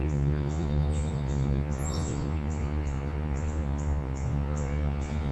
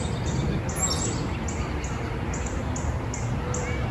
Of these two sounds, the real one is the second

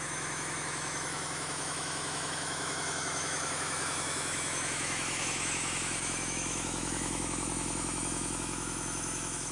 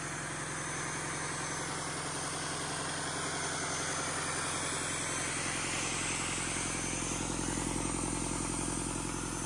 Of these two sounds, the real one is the second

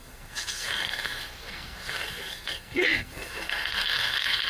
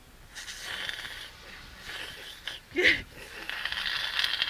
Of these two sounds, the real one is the second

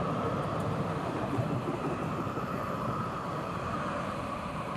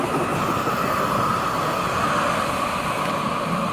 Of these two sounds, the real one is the second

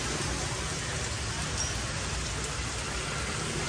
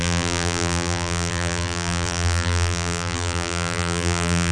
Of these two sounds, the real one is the first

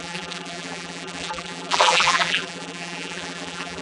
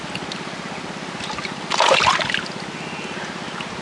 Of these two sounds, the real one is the second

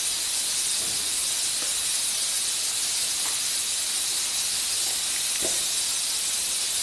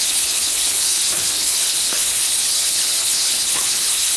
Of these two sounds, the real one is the first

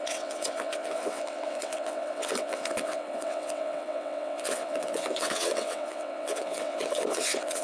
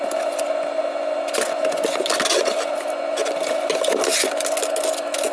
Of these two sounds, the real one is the second